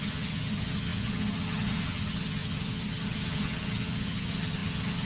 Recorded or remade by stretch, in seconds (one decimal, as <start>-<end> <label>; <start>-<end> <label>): 0.0-5.1 remade